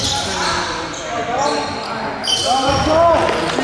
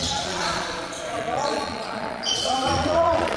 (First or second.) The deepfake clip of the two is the second